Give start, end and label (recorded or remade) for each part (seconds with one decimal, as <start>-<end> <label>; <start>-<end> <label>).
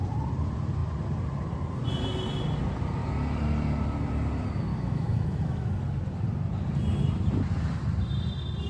0.0-4.7 recorded; 4.7-5.8 remade; 5.8-8.7 recorded